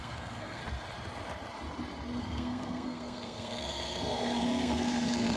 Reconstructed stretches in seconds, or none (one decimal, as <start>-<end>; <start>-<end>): 0.0-0.6; 2.2-5.4